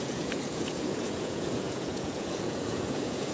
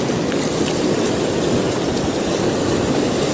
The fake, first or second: first